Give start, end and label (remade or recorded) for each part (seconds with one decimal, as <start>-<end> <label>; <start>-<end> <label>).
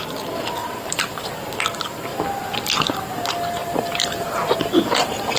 0.0-0.6 recorded; 0.6-1.4 remade; 1.4-3.6 recorded; 3.6-5.4 remade